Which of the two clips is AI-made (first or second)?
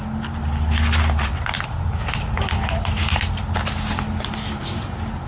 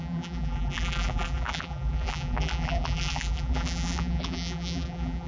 second